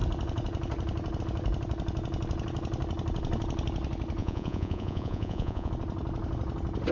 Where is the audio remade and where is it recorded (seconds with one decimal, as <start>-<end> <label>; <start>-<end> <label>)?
0.0-4.2 recorded; 4.2-5.7 remade; 5.7-6.9 recorded